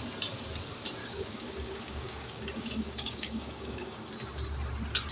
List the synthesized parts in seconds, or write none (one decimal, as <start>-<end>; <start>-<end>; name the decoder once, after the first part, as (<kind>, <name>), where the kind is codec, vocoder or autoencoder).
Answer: 1.0-4.1 (codec, DAC)